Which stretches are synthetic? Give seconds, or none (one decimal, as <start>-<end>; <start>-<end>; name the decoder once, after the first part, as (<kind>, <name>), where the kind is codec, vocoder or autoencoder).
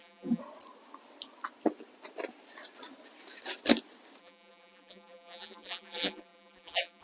0.0-0.4 (vocoder, BigVGAN v2); 4.2-7.0